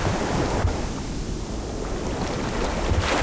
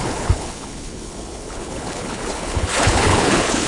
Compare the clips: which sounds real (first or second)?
first